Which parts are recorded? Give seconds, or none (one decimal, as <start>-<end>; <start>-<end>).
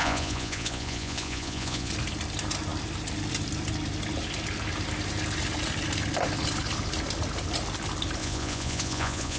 1.9-8.2